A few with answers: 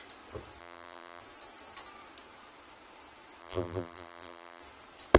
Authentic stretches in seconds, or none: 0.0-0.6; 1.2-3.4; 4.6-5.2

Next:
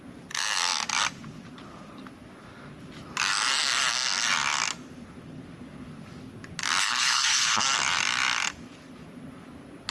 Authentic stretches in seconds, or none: 0.0-6.8; 7.6-9.9

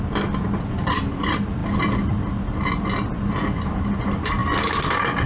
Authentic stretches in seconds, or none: 0.0-5.3